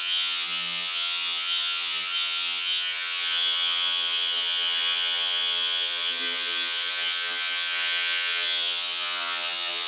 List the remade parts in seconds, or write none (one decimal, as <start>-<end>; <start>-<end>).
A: 0.0-9.9